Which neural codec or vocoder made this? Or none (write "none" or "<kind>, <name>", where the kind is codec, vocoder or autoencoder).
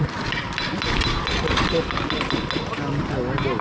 none